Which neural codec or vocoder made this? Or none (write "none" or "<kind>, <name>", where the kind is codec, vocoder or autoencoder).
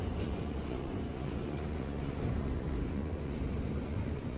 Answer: vocoder, Vocos